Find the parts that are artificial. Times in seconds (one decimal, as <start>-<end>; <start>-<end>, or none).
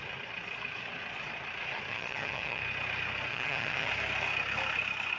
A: 1.9-2.6; 3.3-3.9